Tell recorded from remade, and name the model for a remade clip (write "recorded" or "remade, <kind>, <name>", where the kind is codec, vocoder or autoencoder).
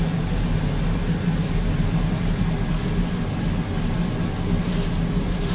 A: recorded